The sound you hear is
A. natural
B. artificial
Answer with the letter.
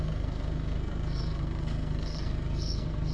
B